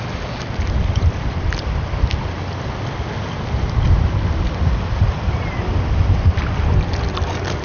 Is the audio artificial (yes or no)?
no